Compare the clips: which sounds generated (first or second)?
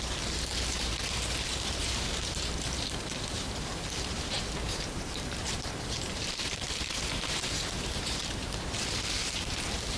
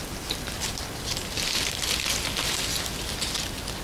first